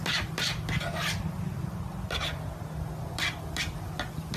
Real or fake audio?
real